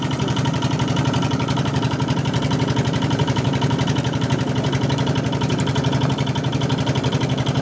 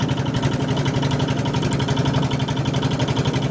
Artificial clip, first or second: first